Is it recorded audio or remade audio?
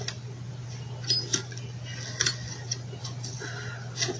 recorded